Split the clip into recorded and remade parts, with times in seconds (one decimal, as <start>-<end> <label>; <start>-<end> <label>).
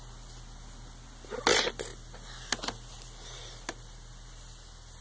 0.0-5.0 recorded